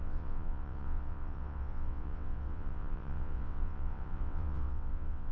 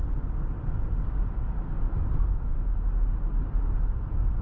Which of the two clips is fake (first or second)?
first